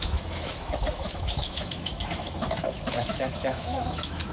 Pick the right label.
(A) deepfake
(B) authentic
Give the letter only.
A